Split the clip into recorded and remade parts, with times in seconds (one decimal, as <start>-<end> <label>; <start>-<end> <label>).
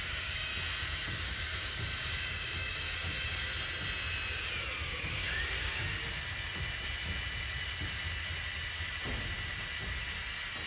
0.0-0.5 remade; 0.5-1.1 recorded; 1.1-3.5 remade; 3.5-4.9 recorded; 4.9-6.0 remade; 6.0-10.7 recorded